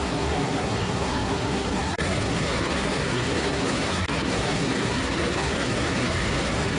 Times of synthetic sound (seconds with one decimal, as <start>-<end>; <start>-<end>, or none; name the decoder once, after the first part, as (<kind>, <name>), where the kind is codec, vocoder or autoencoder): 0.0-6.8 (codec, SNAC)